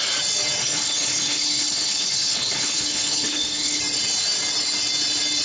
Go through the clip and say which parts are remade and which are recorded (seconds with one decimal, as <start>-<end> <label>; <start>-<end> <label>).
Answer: 0.0-0.6 recorded; 0.6-3.8 remade; 3.8-5.4 recorded